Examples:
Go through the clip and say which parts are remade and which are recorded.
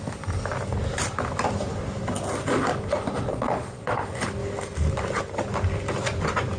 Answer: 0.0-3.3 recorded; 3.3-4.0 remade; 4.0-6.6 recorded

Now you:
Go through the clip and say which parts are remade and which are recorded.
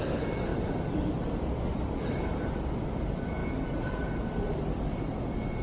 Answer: 0.0-5.6 recorded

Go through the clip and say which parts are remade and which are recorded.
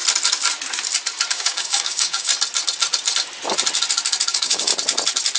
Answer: 0.0-1.3 recorded; 1.3-2.3 remade; 2.3-4.3 recorded; 4.3-4.7 remade; 4.7-5.4 recorded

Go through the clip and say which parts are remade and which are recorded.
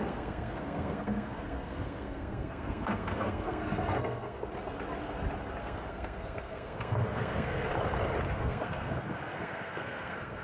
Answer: 0.0-4.4 remade; 4.4-5.6 recorded; 5.6-7.7 remade; 7.7-8.3 recorded; 8.3-10.4 remade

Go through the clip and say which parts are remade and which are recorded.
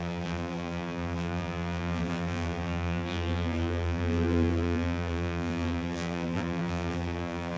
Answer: 0.0-7.6 remade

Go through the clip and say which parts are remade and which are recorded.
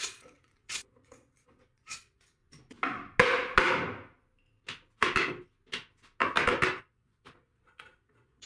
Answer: 0.0-2.4 remade; 2.4-6.8 recorded; 6.8-8.5 remade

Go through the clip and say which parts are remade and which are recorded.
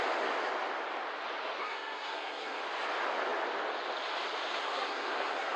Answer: 0.0-1.6 recorded; 1.6-2.6 remade; 2.6-4.6 recorded; 4.6-5.6 remade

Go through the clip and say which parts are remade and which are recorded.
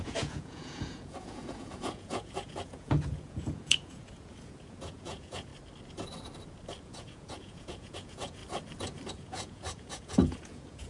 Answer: 0.0-5.5 remade; 5.5-6.8 recorded; 6.8-8.4 remade; 8.4-9.1 recorded; 9.1-10.9 remade